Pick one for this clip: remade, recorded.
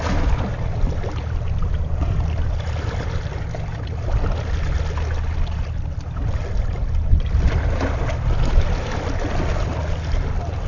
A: recorded